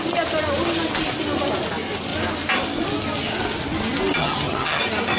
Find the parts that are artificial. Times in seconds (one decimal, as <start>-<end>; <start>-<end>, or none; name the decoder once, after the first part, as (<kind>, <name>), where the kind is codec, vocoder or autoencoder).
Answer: 4.2-4.8 (vocoder, HiFi-GAN)